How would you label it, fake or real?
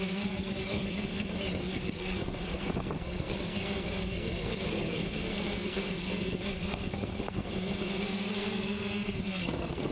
fake